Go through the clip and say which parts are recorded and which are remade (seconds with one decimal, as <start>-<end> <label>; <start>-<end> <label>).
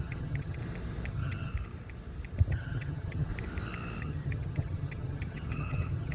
0.0-0.6 remade; 0.6-1.1 recorded; 1.1-1.5 remade; 1.5-2.5 recorded; 2.5-3.3 remade; 3.3-4.0 recorded; 4.0-6.1 remade